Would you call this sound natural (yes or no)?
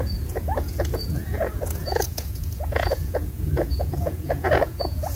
no